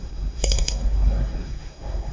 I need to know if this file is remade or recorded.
remade